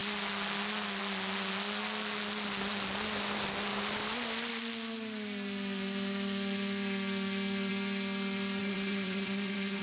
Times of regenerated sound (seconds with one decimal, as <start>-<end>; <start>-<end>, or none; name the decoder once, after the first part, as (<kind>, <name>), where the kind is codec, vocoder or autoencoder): 8.6-9.8 (vocoder, Vocos)